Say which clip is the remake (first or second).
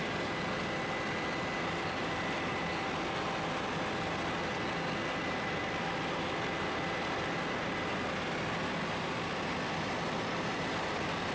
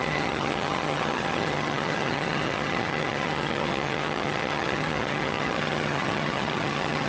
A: second